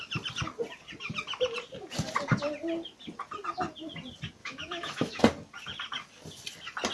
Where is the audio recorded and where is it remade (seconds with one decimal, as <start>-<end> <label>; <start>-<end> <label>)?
0.0-4.4 recorded; 4.4-5.2 remade; 5.2-6.9 recorded